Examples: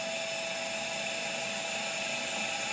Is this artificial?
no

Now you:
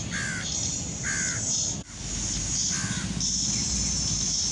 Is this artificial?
no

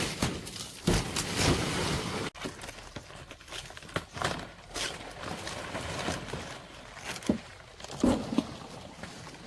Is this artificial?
no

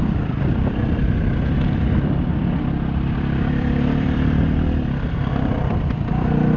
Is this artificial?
yes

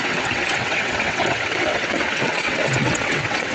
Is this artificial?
yes